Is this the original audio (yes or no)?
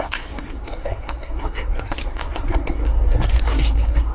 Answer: no